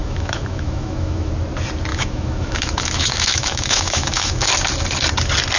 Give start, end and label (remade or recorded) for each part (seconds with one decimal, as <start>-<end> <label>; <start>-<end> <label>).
0.0-1.3 remade; 1.3-1.9 recorded; 1.9-4.5 remade; 4.5-5.6 recorded